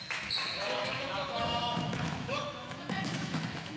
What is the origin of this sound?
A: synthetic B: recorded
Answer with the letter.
A